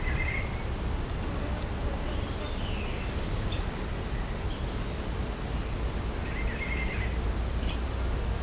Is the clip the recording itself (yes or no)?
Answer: yes